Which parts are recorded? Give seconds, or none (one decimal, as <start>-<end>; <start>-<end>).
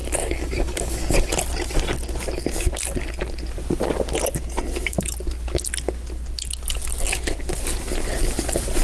1.3-8.8